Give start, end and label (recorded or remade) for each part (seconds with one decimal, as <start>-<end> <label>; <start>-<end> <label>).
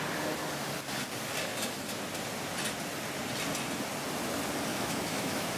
0.0-4.7 recorded; 4.7-5.6 remade